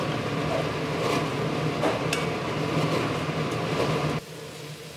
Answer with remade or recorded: recorded